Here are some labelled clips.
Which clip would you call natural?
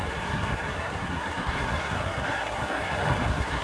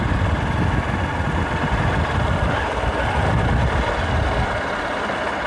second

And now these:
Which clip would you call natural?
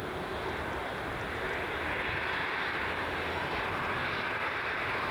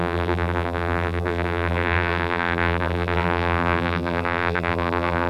first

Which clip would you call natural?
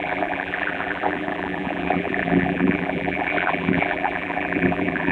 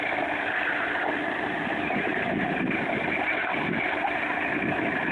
second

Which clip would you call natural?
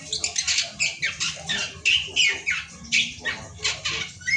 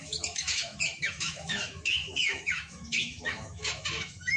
first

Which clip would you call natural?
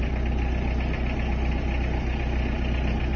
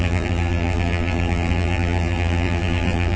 first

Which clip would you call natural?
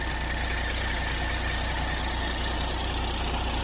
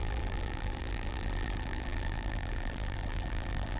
first